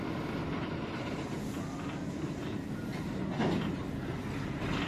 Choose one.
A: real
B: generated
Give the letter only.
A